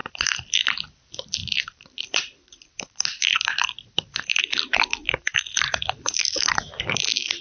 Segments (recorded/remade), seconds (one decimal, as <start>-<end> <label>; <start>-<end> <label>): 0.0-0.6 remade; 0.6-1.4 recorded; 1.4-4.4 remade; 4.4-5.0 recorded; 5.0-5.9 remade; 5.9-7.4 recorded

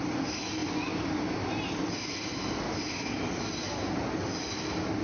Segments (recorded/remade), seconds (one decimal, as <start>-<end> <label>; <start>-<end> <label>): 0.0-5.0 recorded

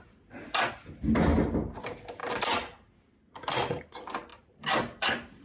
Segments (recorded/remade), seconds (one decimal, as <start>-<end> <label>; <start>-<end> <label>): 0.0-5.4 recorded

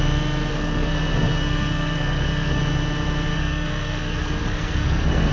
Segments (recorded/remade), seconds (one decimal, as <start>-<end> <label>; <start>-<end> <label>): 0.0-0.5 recorded; 0.5-2.6 remade; 2.6-3.3 recorded; 3.3-5.3 remade

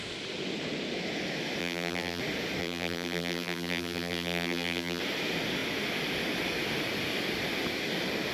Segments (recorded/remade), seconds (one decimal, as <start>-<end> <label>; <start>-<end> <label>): 0.0-1.6 recorded; 1.6-2.2 remade; 2.2-2.6 recorded; 2.6-5.0 remade; 5.0-8.3 recorded

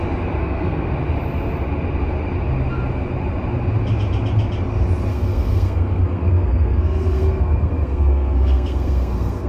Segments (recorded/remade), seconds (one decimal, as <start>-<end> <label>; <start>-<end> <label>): 0.0-0.4 recorded; 0.4-0.9 remade; 0.9-5.1 recorded; 5.1-9.5 remade

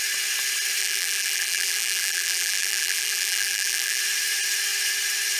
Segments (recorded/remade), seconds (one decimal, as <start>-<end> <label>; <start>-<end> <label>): 0.0-0.8 recorded; 0.8-4.0 remade; 4.0-5.4 recorded